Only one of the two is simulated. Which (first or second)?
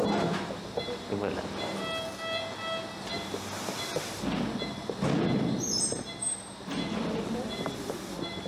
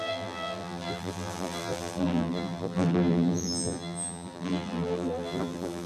second